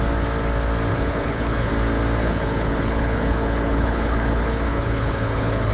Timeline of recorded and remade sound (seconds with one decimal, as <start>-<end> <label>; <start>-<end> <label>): 0.0-0.9 recorded; 0.9-1.7 remade; 1.7-2.2 recorded; 2.2-5.7 remade